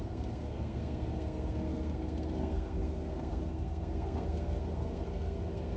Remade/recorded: remade